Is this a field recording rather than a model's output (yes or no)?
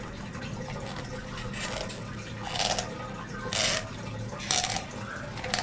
yes